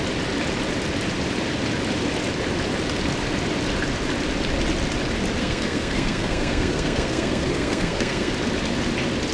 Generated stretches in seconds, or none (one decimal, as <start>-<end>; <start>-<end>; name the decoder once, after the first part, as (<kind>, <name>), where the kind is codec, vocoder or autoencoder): 5.4-8.3 (codec, SNAC)